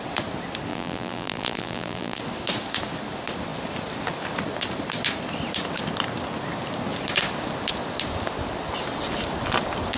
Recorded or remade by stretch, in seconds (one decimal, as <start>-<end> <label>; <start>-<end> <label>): 0.0-0.7 recorded; 0.7-2.2 remade; 2.2-10.0 recorded